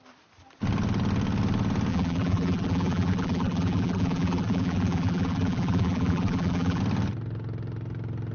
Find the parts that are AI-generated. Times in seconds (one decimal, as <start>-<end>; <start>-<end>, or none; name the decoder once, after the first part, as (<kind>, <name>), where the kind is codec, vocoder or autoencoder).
1.9-6.8 (vocoder, BigVGAN v2)